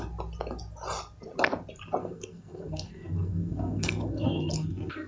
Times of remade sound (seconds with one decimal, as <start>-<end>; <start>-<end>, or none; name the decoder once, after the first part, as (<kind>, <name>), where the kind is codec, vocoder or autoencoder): 2.0-5.1 (codec, SNAC)